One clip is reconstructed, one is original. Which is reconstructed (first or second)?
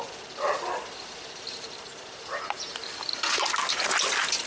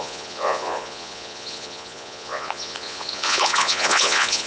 second